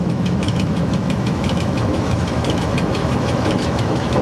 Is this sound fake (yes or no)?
yes